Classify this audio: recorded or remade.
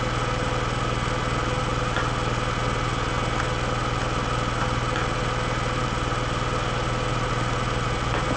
recorded